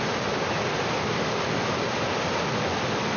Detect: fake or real real